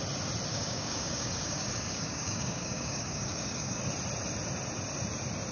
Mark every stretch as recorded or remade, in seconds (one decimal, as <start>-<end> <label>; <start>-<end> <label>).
0.0-0.5 recorded; 0.5-3.8 remade; 3.8-5.5 recorded